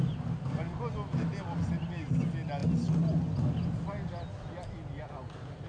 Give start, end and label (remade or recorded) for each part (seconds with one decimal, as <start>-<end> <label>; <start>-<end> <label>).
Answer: 0.0-5.7 recorded